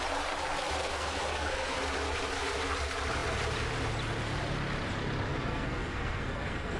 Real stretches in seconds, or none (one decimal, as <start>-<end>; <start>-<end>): 0.0-0.8; 1.8-5.3